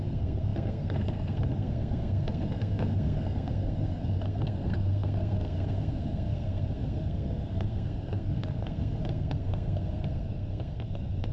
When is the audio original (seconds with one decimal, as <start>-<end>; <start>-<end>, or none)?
none